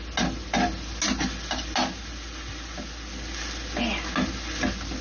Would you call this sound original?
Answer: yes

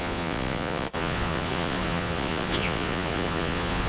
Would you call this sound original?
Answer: no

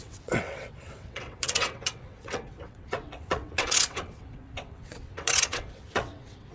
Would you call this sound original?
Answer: no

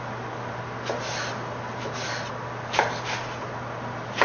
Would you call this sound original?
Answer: yes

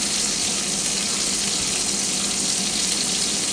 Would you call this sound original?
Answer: yes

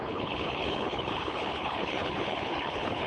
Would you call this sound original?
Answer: no